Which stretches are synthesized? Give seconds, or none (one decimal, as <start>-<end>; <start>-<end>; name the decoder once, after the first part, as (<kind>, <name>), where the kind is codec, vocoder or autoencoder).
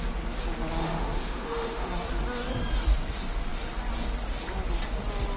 0.8-1.9 (autoencoder, DAC-VAE)